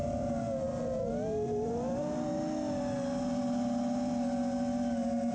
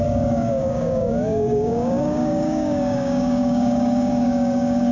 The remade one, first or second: second